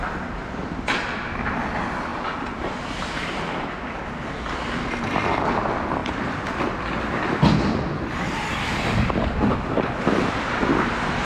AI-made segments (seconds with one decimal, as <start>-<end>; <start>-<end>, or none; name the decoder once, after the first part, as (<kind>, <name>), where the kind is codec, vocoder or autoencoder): 0.4-1.6 (vocoder, BigVGAN v2); 2.1-3.7; 6.0-7.1